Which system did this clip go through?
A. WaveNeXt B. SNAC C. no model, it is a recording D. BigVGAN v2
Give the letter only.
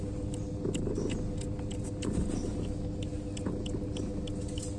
C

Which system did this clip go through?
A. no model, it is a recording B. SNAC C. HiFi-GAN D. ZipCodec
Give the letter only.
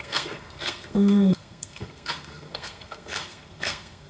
B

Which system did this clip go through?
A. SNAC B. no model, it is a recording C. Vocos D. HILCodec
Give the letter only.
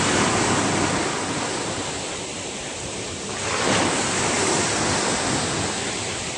B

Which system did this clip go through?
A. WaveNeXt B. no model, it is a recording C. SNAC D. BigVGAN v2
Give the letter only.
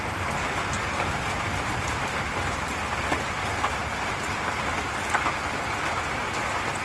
B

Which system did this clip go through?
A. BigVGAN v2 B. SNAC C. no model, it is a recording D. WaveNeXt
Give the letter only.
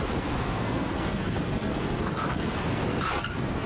B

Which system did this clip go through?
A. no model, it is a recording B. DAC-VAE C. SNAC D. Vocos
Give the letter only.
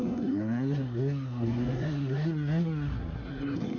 C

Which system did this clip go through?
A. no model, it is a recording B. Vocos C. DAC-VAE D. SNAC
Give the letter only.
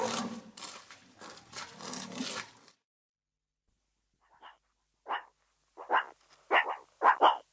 A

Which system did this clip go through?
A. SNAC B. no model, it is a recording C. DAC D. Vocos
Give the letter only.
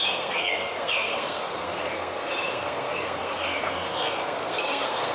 A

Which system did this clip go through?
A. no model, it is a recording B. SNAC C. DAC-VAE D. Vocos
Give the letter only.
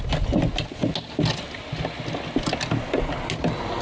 A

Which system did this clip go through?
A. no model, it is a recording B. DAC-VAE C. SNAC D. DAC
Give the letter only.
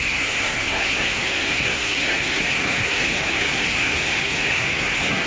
C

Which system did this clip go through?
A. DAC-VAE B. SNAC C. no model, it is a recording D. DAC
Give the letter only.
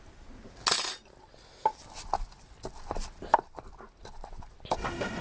C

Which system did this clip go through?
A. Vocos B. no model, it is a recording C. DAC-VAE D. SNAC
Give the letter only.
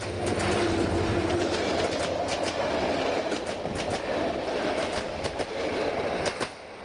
B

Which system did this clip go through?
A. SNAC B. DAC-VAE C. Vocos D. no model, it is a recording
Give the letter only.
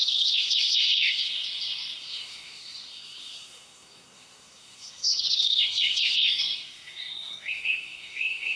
A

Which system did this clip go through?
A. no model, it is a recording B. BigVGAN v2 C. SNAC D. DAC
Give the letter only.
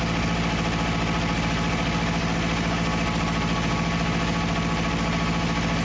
A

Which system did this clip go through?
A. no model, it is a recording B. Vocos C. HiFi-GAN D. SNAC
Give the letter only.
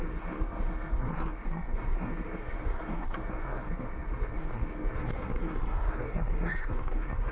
D